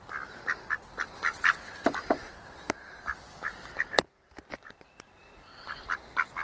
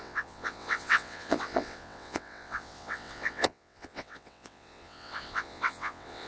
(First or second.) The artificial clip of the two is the second